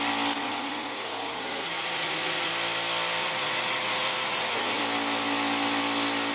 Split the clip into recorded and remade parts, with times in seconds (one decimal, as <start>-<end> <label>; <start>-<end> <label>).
0.0-0.4 recorded; 0.4-2.5 remade; 2.5-3.2 recorded; 3.2-4.8 remade; 4.8-6.3 recorded